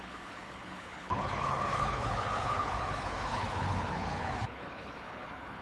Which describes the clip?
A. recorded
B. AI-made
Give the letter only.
B